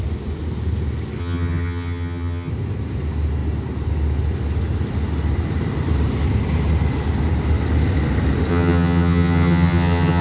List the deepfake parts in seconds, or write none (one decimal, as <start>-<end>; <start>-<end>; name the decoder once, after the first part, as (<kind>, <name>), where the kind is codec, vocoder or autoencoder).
1.2-2.5 (vocoder, HiFi-GAN); 8.5-10.2